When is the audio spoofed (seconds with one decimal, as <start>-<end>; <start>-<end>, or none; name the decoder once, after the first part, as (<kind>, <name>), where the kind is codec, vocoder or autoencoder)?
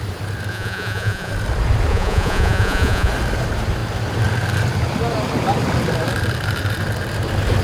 0.5-1.3 (vocoder, Vocos); 1.9-3.1